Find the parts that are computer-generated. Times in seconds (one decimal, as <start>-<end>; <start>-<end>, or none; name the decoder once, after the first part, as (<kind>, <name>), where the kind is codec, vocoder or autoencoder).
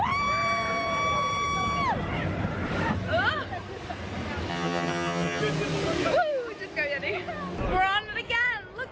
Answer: 4.5-5.4 (vocoder, HiFi-GAN)